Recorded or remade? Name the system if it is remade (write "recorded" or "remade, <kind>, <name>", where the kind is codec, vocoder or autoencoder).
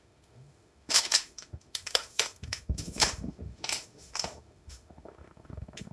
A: remade, autoencoder, DAC-VAE